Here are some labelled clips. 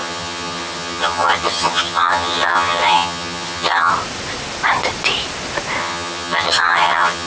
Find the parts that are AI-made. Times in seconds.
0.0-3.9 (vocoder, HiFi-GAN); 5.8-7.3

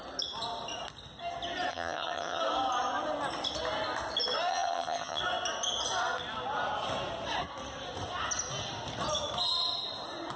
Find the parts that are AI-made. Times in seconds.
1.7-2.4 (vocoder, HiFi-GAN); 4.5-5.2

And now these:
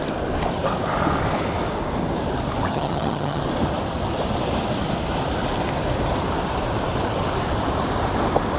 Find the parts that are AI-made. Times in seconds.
2.7-3.4 (vocoder, HiFi-GAN)